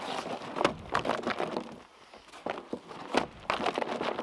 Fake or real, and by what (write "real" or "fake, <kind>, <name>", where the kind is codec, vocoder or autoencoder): real